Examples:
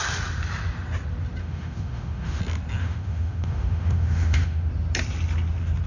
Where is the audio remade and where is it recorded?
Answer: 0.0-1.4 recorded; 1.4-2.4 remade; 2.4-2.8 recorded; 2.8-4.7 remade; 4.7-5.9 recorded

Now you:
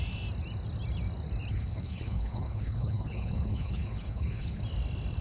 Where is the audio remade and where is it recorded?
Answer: 0.0-1.5 recorded; 1.5-4.6 remade; 4.6-5.2 recorded

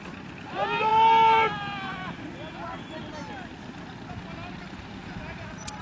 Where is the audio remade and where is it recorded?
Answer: 0.0-5.8 recorded

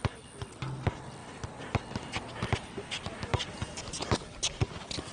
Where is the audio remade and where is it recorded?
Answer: 0.0-3.3 recorded; 3.3-4.1 remade; 4.1-5.1 recorded

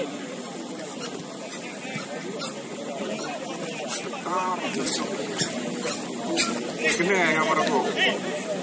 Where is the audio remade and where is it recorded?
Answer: 0.0-8.6 recorded